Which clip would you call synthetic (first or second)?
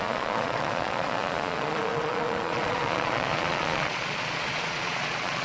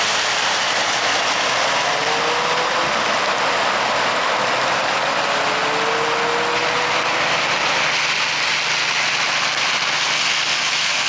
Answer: first